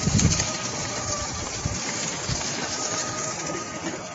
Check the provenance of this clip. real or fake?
fake